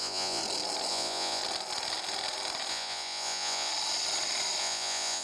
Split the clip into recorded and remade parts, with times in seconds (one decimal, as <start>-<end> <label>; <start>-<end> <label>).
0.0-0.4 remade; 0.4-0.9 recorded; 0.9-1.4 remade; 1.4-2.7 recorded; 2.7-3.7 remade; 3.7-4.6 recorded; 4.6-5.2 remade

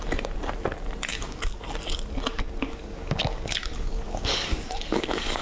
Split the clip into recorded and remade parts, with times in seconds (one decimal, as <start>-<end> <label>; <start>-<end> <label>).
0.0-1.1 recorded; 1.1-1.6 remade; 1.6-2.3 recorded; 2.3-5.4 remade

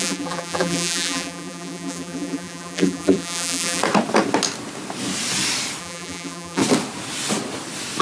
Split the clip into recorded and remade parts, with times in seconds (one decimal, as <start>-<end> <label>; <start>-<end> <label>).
0.0-3.8 remade; 3.8-5.8 recorded; 5.8-6.6 remade; 6.6-8.0 recorded

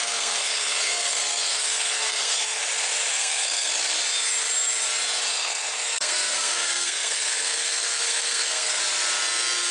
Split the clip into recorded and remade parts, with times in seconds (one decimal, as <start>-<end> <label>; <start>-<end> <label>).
0.0-2.6 remade; 2.6-3.1 recorded; 3.1-3.7 remade; 3.7-5.3 recorded; 5.3-8.8 remade; 8.8-9.7 recorded